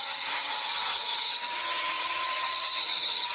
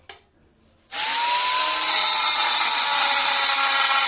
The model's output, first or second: first